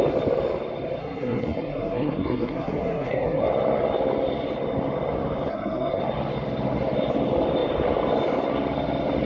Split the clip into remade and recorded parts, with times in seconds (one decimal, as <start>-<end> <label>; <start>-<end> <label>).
0.0-1.0 recorded; 1.0-3.4 remade; 3.4-5.5 recorded; 5.5-6.0 remade; 6.0-9.3 recorded